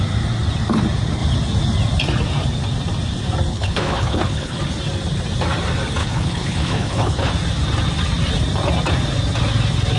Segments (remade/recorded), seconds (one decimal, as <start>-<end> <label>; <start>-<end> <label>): 0.0-3.5 recorded; 3.5-4.6 remade; 4.6-6.0 recorded; 6.0-7.3 remade; 7.3-10.0 recorded